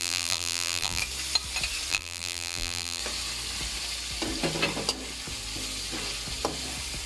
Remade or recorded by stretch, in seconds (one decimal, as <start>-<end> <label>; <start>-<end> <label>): 0.0-1.0 remade; 1.0-1.9 recorded; 1.9-3.0 remade; 3.0-7.1 recorded